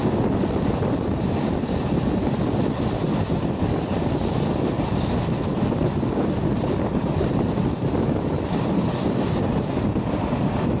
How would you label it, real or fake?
real